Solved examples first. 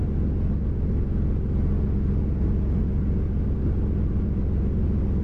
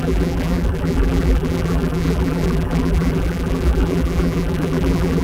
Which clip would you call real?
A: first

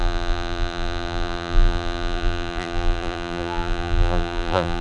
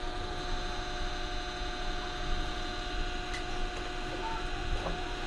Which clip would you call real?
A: second